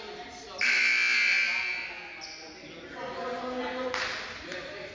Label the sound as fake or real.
real